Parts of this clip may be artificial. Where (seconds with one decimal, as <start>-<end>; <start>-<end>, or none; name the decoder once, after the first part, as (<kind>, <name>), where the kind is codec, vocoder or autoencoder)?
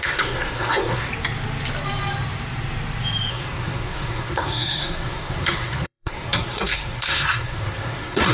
0.0-1.1 (codec, SNAC); 3.3-8.3